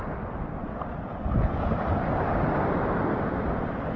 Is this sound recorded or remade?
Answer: recorded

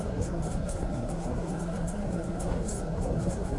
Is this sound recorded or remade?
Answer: remade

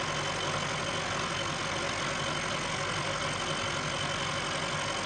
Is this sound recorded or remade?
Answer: recorded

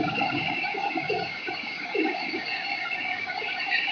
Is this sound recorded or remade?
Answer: remade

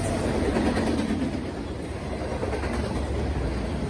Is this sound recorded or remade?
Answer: recorded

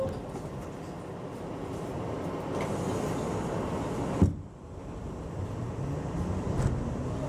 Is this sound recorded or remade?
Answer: recorded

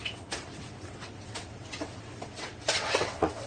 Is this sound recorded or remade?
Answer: remade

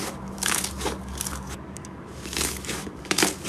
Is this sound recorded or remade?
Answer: remade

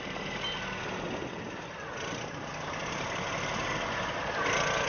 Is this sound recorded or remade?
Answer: recorded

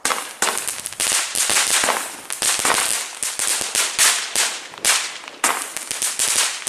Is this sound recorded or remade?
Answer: recorded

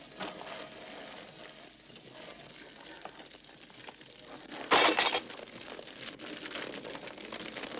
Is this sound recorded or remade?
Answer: recorded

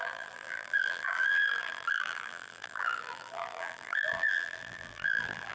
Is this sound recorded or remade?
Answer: remade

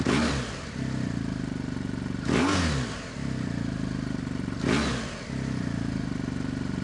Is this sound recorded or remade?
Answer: recorded